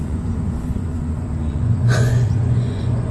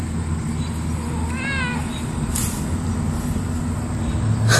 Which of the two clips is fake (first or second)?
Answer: first